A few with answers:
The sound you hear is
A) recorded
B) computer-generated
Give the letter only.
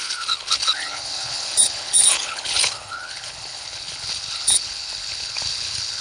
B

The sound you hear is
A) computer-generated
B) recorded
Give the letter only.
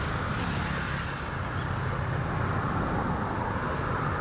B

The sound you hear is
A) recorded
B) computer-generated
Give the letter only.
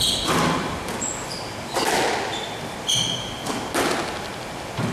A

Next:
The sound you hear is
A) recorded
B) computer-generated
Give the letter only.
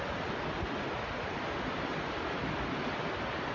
A